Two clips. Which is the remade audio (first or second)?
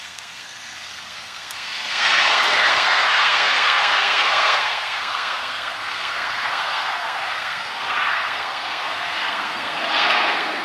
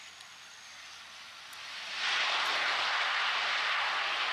first